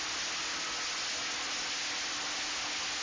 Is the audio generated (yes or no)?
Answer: no